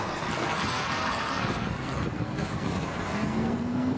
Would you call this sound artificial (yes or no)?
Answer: yes